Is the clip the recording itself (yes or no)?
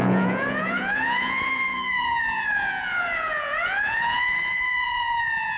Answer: no